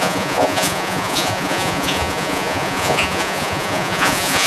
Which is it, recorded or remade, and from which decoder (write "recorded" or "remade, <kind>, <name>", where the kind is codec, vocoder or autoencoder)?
remade, vocoder, Vocos